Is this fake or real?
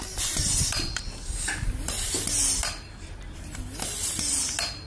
real